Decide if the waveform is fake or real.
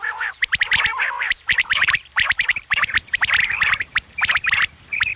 fake